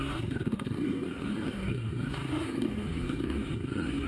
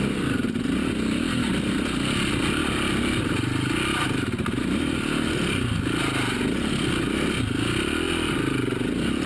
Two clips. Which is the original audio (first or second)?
second